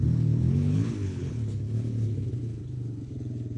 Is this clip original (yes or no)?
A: no